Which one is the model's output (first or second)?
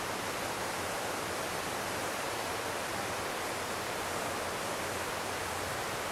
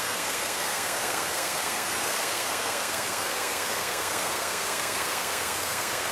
second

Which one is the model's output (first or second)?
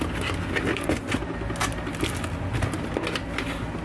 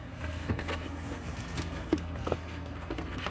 second